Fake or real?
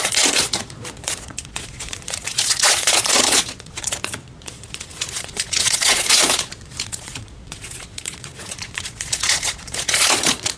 fake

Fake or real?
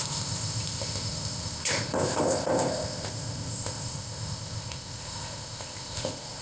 fake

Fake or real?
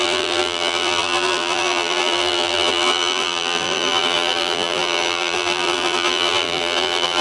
fake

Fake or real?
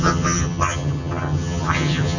fake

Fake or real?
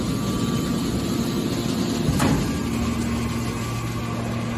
real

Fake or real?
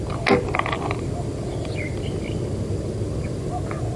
real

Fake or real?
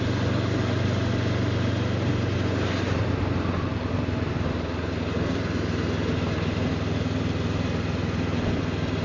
real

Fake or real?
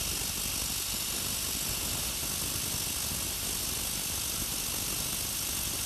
real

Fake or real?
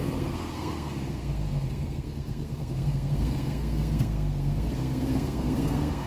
fake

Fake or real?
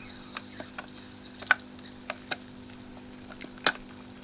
real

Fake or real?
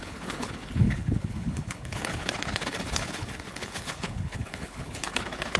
fake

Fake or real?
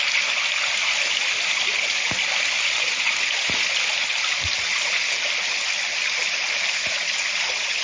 real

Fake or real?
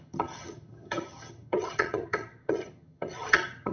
fake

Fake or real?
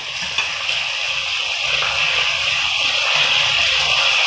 real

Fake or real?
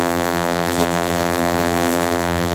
fake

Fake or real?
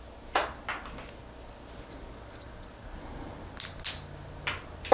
real